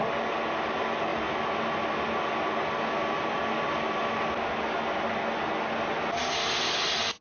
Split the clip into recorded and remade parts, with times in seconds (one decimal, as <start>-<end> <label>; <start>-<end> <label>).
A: 0.0-7.2 recorded